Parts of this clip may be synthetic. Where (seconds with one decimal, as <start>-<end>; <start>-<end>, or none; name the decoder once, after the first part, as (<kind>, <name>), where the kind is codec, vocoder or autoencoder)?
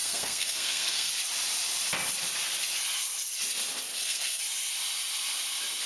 0.0-1.1 (codec, SNAC); 3.9-4.4